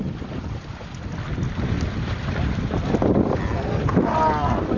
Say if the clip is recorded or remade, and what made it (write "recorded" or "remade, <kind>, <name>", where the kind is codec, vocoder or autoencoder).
recorded